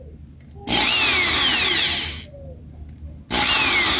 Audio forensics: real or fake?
real